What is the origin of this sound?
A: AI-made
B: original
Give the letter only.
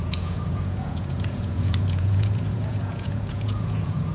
A